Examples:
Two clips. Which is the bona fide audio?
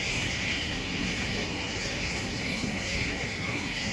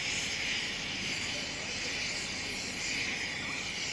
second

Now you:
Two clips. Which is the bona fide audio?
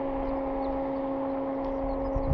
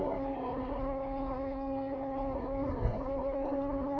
first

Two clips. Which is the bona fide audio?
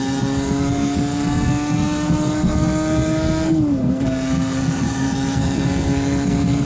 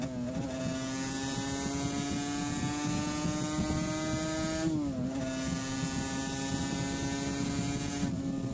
second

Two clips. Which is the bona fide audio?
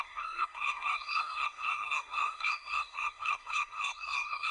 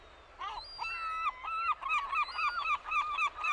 second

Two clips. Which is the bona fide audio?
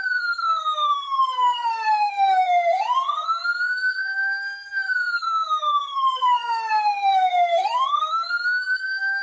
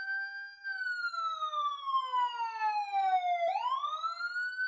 second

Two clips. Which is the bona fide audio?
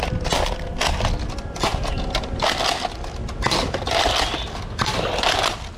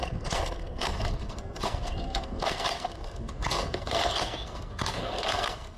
first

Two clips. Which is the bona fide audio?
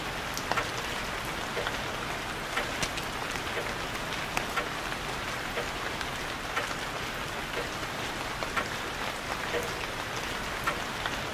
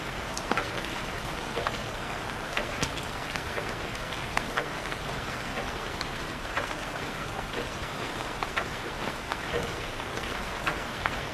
first